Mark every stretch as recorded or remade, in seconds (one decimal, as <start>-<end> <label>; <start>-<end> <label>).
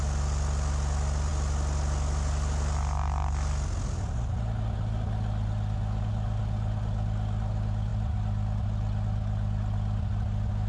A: 0.0-10.7 recorded